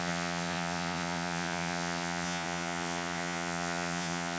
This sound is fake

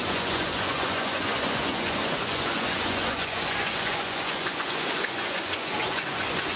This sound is fake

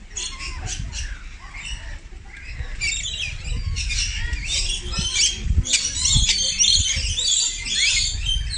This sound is real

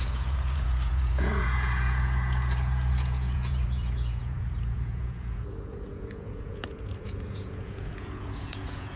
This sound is fake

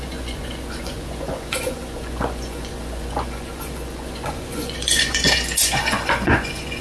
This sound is fake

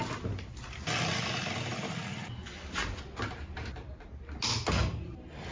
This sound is real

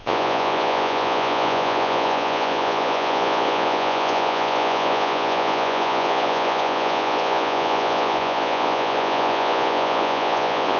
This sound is fake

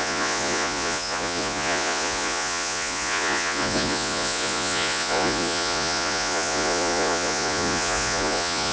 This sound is fake